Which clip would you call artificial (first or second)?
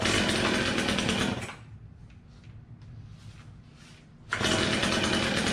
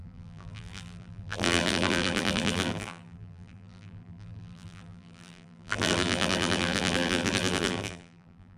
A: second